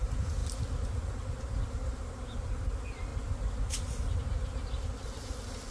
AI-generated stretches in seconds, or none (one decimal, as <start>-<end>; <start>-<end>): none